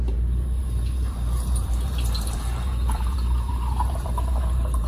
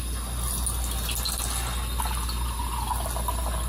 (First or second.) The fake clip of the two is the first